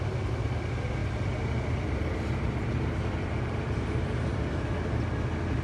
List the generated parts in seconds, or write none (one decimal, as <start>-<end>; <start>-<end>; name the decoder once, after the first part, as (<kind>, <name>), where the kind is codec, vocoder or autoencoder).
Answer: 1.0-4.4 (vocoder, BigVGAN v2)